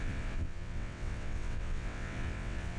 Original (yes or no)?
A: no